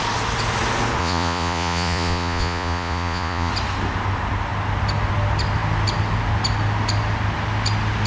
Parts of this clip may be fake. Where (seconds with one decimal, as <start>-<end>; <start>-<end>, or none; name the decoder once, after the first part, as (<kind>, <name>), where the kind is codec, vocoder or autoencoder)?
1.0-3.5 (vocoder, Vocos)